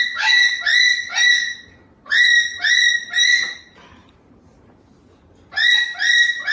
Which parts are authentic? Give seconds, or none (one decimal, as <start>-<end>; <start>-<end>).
0.0-6.5